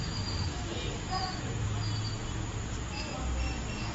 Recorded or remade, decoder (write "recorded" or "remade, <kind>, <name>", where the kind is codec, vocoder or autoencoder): recorded